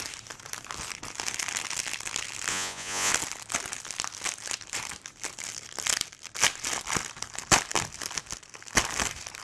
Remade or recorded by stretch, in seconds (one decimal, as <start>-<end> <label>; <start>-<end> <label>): 0.0-2.5 recorded; 2.5-3.1 remade; 3.1-9.4 recorded